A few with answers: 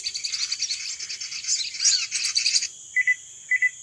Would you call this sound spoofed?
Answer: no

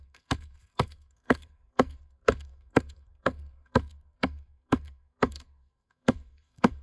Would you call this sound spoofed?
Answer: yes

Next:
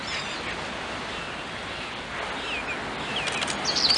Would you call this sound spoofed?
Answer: no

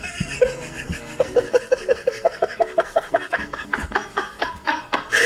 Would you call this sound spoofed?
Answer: yes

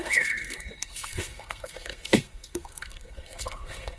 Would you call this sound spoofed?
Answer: yes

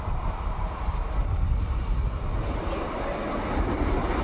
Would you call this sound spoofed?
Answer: no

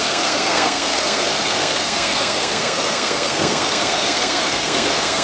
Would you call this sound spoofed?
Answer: yes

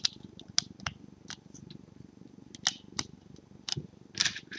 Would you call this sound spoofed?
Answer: no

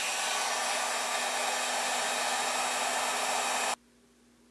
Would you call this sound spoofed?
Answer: no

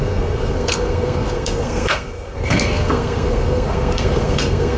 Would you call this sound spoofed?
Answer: yes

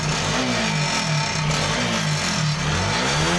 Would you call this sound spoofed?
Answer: no